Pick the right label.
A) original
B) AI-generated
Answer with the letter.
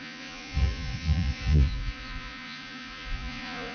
B